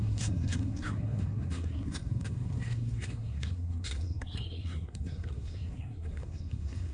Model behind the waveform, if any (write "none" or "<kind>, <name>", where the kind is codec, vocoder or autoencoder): codec, SNAC